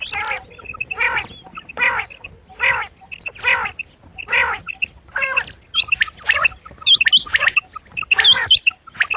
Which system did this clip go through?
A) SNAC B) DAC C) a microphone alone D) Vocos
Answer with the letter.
C